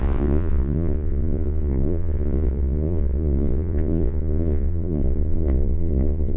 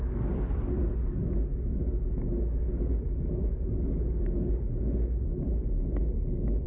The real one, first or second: second